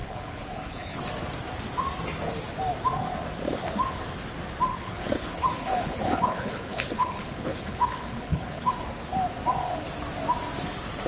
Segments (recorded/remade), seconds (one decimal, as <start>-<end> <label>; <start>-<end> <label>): 0.0-1.0 remade; 1.0-4.7 recorded; 4.7-8.7 remade; 8.7-11.1 recorded